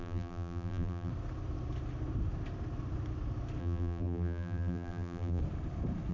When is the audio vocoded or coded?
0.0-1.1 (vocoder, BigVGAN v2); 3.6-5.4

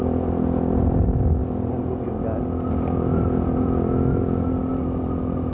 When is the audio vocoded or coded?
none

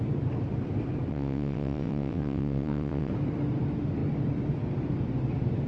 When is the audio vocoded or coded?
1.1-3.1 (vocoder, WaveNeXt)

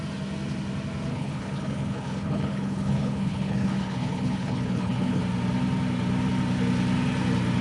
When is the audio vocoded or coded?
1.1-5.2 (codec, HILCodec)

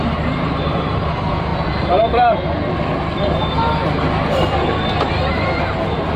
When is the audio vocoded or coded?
0.0-1.5 (vocoder, BigVGAN v2); 5.2-6.2

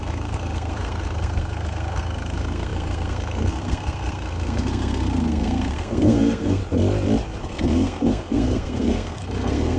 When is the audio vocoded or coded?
0.0-6.6 (codec, SNAC); 7.4-9.8